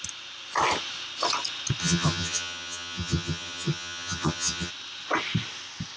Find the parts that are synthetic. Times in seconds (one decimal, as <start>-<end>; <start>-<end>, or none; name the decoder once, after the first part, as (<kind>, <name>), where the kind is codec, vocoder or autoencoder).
1.8-4.7 (vocoder, HiFi-GAN)